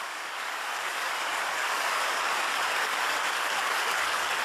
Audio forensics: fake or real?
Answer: fake